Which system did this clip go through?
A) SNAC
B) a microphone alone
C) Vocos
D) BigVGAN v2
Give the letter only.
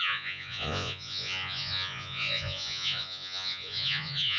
C